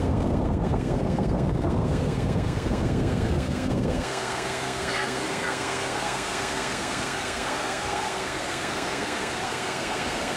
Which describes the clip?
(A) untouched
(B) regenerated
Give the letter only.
B